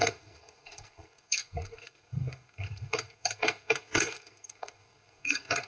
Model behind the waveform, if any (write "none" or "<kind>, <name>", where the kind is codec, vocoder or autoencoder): codec, SNAC